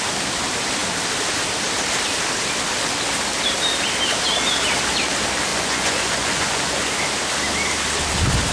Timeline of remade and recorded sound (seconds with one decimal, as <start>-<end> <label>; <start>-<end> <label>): 0.0-5.5 recorded; 5.5-6.9 remade; 6.9-8.5 recorded